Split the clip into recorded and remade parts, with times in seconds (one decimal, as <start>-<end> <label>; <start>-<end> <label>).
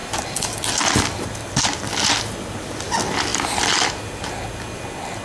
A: 0.0-5.2 recorded